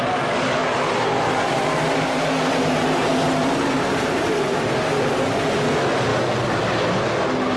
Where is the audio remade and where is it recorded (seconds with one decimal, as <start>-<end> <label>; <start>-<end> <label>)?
0.0-0.6 recorded; 0.6-5.1 remade; 5.1-6.1 recorded; 6.1-7.0 remade; 7.0-7.6 recorded